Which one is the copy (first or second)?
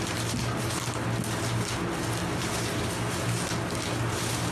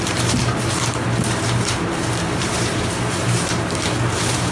second